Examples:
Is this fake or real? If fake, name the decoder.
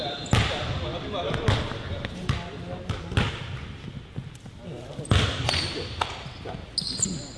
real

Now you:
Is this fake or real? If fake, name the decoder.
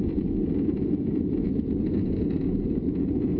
fake, vocoder, Vocos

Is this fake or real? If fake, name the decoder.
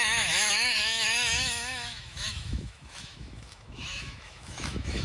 fake, autoencoder, DAC-VAE